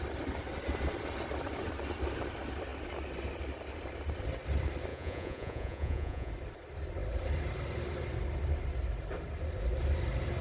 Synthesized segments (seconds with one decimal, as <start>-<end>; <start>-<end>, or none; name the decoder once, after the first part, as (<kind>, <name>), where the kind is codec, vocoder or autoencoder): 4.9-6.3 (vocoder, Vocos)